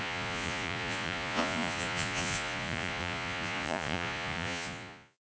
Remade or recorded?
remade